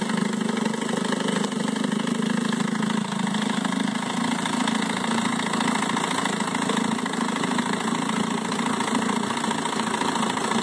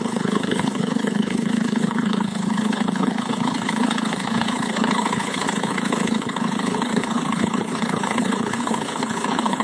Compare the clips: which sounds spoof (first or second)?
second